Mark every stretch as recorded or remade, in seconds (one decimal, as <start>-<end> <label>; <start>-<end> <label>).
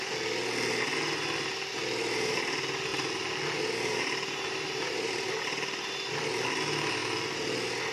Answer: 0.0-7.9 recorded